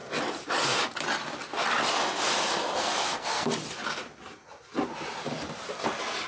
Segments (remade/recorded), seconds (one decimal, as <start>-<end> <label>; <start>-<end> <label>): 0.0-2.8 recorded; 2.8-3.5 remade; 3.5-6.3 recorded